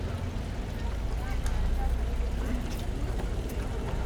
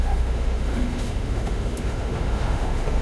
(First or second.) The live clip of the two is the first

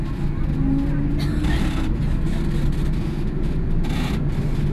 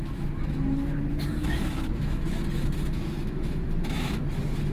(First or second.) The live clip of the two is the first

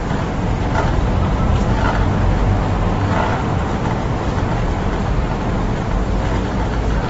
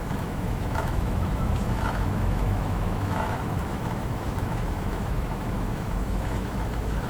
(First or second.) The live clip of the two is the first